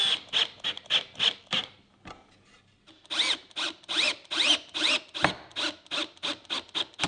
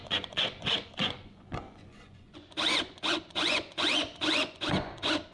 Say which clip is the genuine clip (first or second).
first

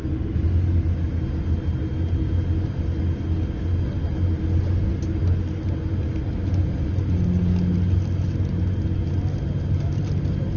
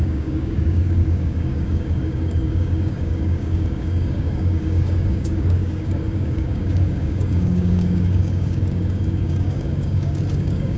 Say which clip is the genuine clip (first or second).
first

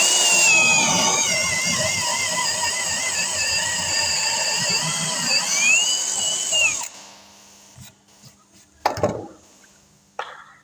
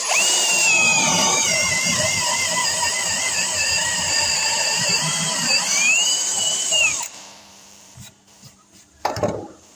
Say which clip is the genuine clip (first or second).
first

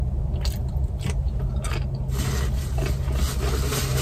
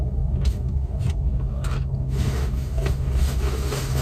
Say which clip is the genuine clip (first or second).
first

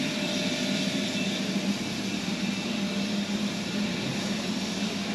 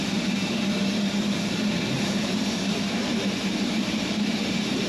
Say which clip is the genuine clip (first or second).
first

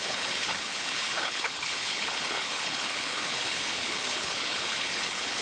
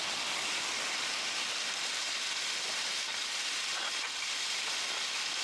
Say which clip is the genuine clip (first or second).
second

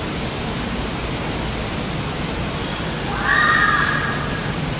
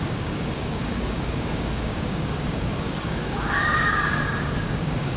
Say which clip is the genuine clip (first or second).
first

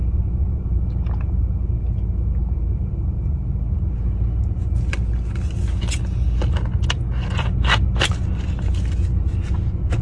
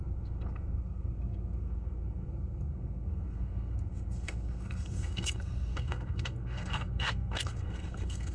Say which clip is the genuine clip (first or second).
first